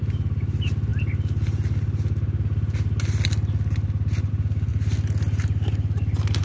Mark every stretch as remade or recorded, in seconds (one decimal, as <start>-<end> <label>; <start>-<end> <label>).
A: 0.0-6.4 recorded